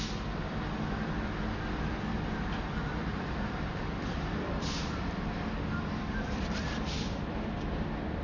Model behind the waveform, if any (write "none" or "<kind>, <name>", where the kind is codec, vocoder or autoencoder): vocoder, BigVGAN v2